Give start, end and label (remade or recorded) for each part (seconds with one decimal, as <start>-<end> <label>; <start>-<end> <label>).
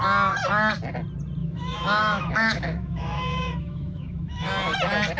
0.0-1.4 recorded; 1.4-4.5 remade; 4.5-5.2 recorded